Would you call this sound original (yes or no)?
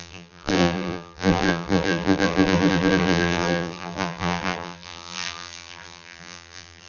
no